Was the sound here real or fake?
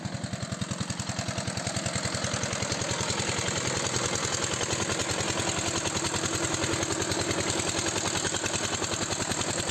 real